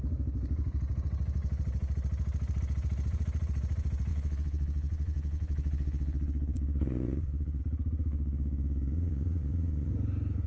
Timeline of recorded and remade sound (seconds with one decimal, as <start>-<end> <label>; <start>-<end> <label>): 0.0-4.1 recorded; 4.1-7.6 remade; 7.6-8.1 recorded; 8.1-9.9 remade; 9.9-10.5 recorded